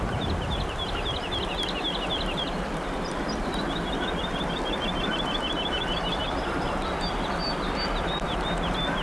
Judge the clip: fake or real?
fake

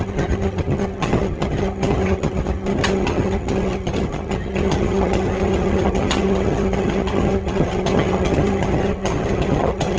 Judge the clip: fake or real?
fake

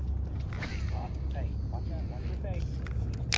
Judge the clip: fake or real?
real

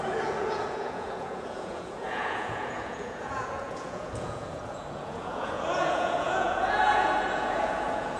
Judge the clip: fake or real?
fake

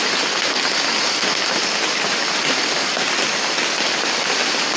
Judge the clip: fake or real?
real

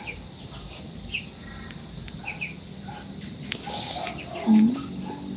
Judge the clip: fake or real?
real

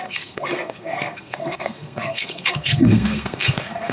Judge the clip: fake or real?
fake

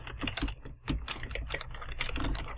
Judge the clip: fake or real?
real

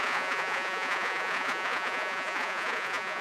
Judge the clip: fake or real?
fake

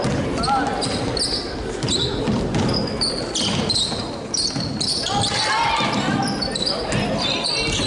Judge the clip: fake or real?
real